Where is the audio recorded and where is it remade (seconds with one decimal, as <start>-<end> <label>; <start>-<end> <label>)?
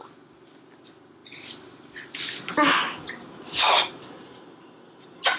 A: 0.0-5.4 recorded